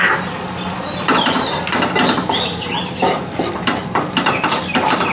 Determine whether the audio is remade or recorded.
recorded